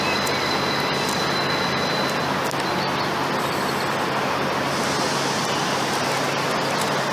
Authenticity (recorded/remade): recorded